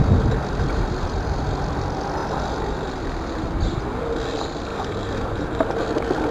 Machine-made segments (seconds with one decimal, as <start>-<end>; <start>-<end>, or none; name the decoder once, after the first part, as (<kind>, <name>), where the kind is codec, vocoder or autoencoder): 4.7-5.8 (vocoder, BigVGAN v2)

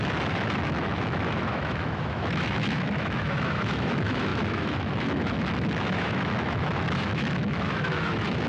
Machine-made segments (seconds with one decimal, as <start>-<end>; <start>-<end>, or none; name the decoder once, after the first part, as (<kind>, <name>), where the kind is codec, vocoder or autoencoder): 0.0-8.5 (autoencoder, DAC-VAE)

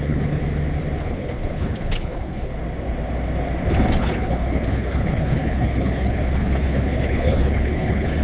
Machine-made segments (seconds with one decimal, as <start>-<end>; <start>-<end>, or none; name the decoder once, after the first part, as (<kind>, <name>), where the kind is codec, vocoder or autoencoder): 0.0-0.4 (codec, HILCodec); 1.0-2.5; 4.0-8.2